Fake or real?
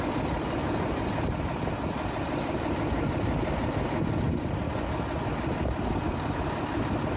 real